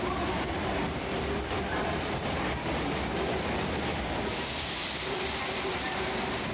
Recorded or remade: recorded